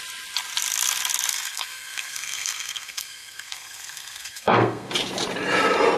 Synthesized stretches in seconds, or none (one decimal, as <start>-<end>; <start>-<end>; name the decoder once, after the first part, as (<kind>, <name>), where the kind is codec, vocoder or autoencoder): 1.3-4.9 (codec, SNAC)